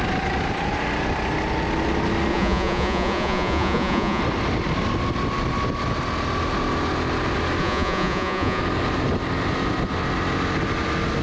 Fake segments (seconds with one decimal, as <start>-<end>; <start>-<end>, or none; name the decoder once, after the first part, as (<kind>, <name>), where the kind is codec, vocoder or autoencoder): 2.3-4.2 (vocoder, Vocos); 7.6-8.6